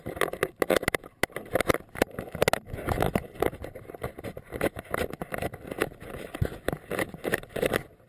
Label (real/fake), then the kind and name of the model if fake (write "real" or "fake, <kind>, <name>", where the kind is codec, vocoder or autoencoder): real